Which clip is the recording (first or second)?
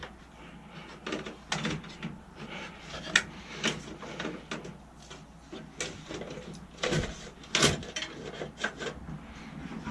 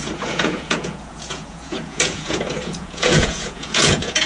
first